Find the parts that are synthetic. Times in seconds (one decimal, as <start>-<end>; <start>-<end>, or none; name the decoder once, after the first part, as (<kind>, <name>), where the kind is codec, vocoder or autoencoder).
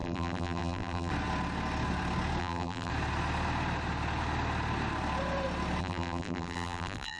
0.0-1.1 (vocoder, BigVGAN v2); 2.4-2.9; 5.8-7.2